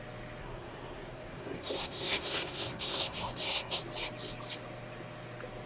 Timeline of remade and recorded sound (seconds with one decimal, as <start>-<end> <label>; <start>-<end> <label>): 0.0-0.4 recorded; 0.4-3.8 remade; 3.8-5.7 recorded